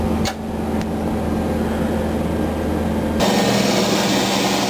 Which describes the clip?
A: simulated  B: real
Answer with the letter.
B